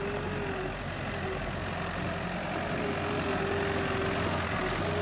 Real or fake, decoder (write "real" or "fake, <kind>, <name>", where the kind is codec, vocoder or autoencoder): real